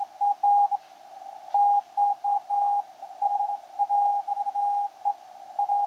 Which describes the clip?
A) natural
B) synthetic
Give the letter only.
A